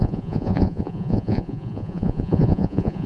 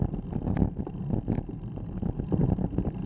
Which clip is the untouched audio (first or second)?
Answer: second